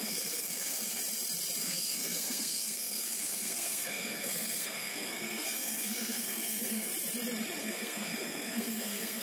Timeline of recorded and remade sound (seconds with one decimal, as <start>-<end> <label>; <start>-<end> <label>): 0.0-1.0 remade; 1.0-1.6 recorded; 1.6-6.9 remade; 6.9-7.6 recorded; 7.6-9.2 remade